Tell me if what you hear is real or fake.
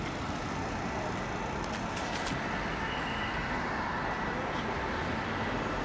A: real